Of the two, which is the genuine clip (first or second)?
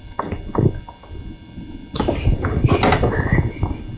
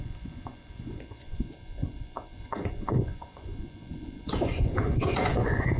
first